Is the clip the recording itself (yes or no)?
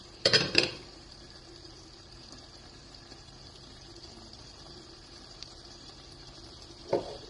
no